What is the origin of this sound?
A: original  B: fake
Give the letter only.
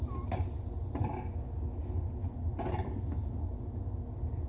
A